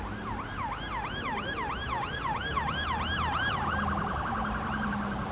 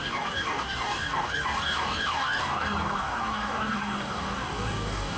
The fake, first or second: second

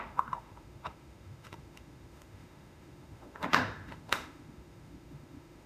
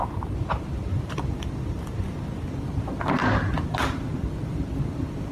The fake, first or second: first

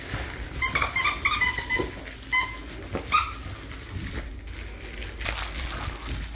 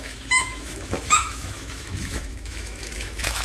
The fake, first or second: second